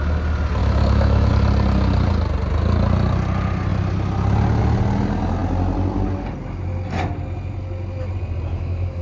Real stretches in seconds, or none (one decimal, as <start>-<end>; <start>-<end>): 0.0-0.6; 1.3-8.5